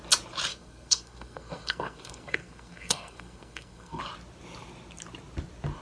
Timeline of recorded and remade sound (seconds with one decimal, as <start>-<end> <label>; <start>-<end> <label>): 0.0-0.5 recorded; 0.5-4.0 remade; 4.0-5.8 recorded